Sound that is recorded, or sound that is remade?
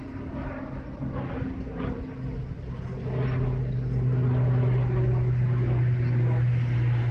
recorded